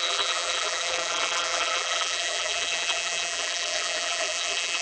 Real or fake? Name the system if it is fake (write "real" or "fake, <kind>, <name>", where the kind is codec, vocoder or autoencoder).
fake, vocoder, BigVGAN v2